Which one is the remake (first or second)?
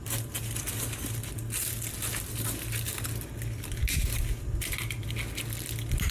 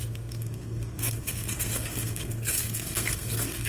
second